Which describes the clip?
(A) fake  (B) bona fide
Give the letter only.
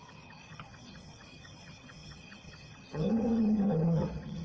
A